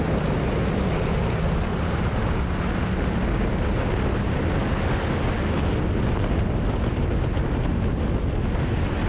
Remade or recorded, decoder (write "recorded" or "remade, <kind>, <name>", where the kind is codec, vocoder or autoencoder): recorded